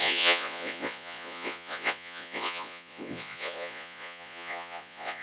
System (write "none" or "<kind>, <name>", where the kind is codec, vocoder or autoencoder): vocoder, Vocos